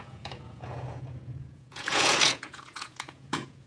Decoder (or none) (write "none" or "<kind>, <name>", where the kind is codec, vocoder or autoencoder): vocoder, Vocos